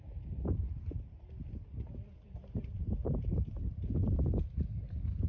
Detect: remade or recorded recorded